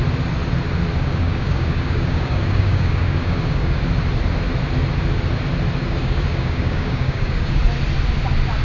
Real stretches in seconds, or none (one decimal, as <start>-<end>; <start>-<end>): 0.0-1.0; 3.8-5.8; 7.6-8.6

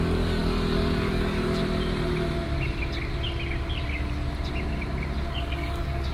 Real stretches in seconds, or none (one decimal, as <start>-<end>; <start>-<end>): 1.6-5.3

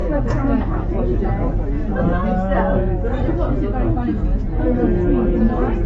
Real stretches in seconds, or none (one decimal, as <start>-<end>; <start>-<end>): 0.9-5.9

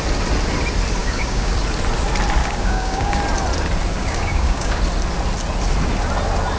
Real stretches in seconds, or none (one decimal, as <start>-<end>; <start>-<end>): 0.0-1.0; 1.5-2.4; 3.2-3.9; 4.8-6.6

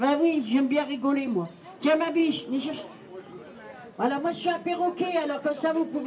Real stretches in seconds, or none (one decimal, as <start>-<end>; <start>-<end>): 0.0-6.1

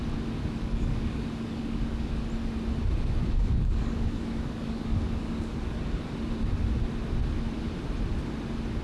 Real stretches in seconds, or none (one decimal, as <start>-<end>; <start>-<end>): 0.0-0.4; 2.1-3.2; 6.0-8.8

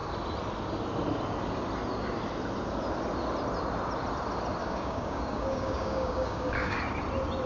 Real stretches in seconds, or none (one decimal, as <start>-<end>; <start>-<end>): 0.0-4.6; 6.8-7.5

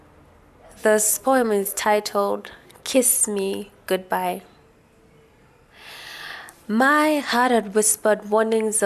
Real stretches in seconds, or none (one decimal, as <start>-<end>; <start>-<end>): 0.0-1.0; 2.7-8.9